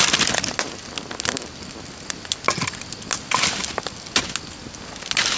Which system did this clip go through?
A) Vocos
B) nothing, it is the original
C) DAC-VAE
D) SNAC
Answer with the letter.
B